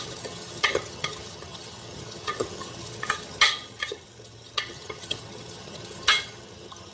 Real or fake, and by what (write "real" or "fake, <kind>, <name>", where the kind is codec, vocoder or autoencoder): fake, vocoder, HiFi-GAN